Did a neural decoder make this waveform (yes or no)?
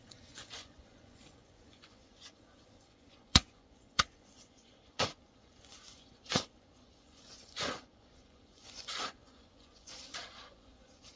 yes